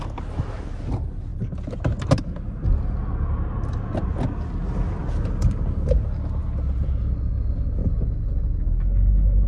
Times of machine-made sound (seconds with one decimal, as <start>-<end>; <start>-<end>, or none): none